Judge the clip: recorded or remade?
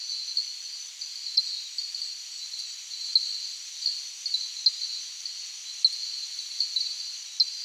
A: recorded